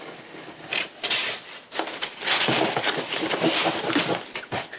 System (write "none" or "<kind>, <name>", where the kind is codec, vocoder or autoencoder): none